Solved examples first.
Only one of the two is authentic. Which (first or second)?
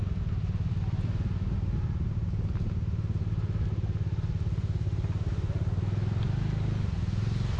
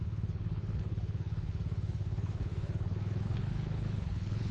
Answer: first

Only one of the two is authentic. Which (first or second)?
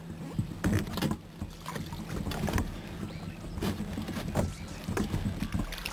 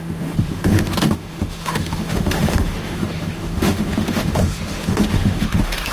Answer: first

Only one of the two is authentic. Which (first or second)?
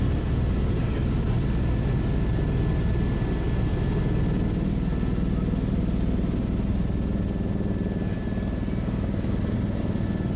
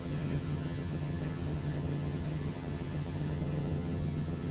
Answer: first